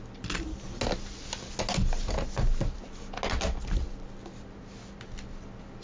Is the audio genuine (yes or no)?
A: yes